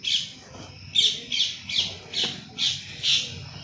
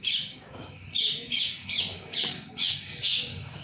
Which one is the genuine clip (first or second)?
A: first